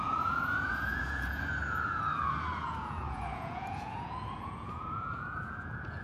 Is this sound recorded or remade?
remade